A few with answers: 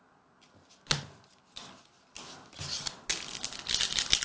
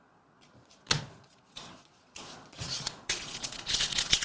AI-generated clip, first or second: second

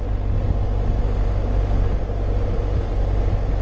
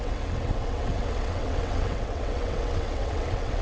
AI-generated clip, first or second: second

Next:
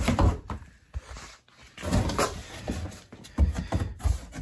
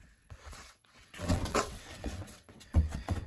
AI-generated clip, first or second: second